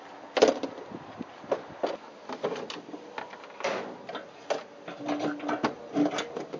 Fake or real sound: real